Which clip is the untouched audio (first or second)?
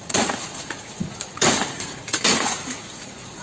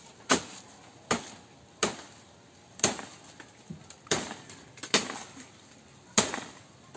second